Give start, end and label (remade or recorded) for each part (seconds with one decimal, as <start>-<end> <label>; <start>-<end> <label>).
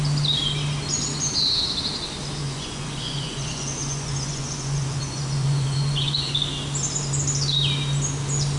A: 0.0-2.4 recorded; 2.4-6.3 remade; 6.3-8.6 recorded